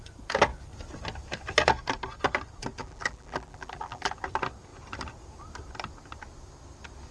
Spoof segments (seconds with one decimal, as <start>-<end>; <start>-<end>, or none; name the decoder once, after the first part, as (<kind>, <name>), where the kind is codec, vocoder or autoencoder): 2.8-4.1 (vocoder, BigVGAN v2)